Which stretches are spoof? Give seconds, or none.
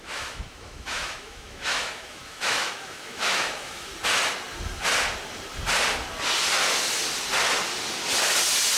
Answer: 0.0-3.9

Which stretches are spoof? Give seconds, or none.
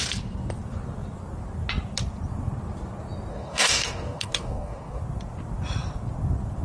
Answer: 3.3-5.0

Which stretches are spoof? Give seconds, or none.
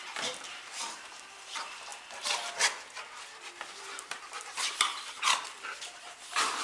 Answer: 0.0-1.9; 3.8-4.9; 6.0-6.6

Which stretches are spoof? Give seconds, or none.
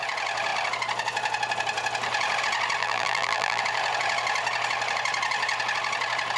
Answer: 2.8-3.6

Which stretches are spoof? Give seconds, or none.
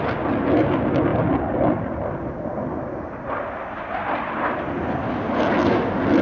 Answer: none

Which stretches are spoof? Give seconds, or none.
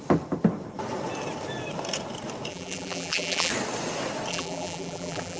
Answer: 2.5-3.5; 4.3-5.4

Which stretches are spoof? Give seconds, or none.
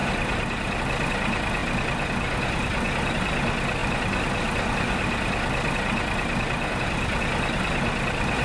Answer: none